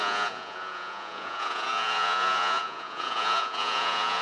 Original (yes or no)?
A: no